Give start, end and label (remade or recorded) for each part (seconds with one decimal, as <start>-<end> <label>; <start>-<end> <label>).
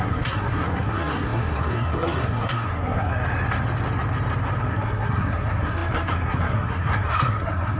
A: 0.0-3.1 remade; 3.1-4.6 recorded; 4.6-7.8 remade